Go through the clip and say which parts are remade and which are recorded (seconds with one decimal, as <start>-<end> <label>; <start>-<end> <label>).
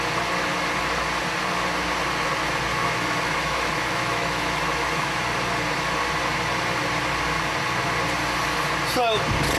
0.0-2.7 recorded; 2.7-5.2 remade; 5.2-9.6 recorded